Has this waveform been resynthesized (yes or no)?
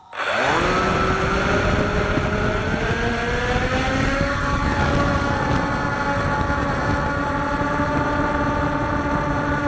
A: no